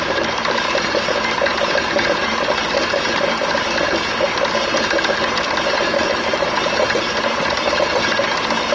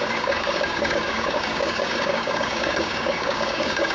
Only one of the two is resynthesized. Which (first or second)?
second